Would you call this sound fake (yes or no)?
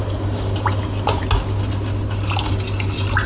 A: no